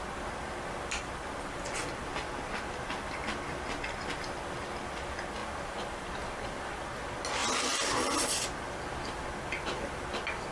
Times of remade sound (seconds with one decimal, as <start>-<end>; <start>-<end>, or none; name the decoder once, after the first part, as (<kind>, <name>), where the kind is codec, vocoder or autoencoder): none